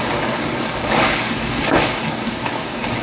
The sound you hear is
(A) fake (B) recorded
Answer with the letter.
A